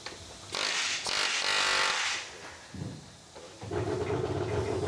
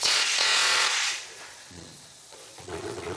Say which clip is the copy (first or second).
second